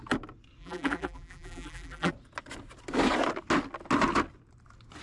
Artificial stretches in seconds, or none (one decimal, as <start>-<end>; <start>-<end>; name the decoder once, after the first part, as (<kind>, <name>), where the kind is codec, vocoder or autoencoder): 0.6-2.1 (vocoder, BigVGAN v2)